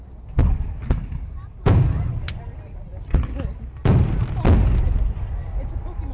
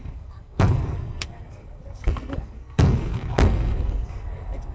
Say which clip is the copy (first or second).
second